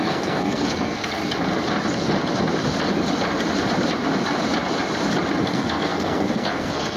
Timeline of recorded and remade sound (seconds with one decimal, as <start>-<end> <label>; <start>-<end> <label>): 0.0-1.2 remade; 1.2-5.4 recorded; 5.4-7.0 remade